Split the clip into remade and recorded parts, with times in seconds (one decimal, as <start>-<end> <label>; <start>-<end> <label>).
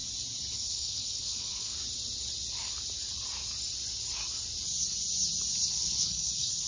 0.0-0.5 recorded; 0.5-1.7 remade; 1.7-5.7 recorded; 5.7-6.7 remade